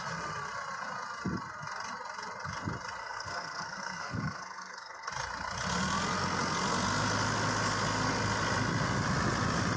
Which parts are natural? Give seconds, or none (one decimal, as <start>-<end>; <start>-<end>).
0.0-3.0; 5.1-9.8